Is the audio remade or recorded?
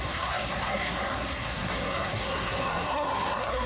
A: remade